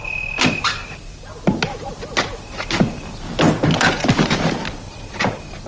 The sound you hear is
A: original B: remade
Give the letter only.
A